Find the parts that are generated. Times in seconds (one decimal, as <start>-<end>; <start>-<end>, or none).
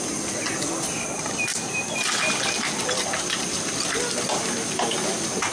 none